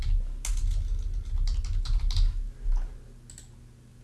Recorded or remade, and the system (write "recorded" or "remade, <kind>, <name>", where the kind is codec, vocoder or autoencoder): recorded